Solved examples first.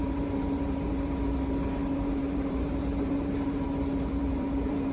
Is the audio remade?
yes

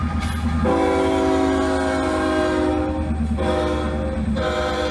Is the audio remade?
no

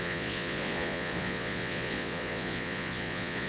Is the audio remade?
yes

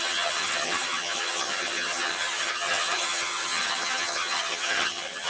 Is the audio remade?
yes